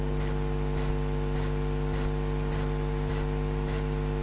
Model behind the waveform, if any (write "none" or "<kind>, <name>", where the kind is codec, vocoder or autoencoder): none